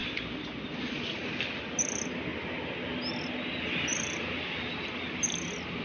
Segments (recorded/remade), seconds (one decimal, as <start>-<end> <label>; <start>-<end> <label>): 0.0-1.0 remade; 1.0-5.8 recorded